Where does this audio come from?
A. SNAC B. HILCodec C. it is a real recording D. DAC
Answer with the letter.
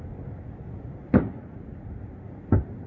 C